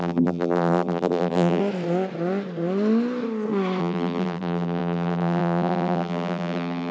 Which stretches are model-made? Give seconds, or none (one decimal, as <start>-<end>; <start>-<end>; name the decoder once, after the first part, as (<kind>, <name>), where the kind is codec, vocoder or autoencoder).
0.0-1.6 (vocoder, BigVGAN v2); 3.8-6.9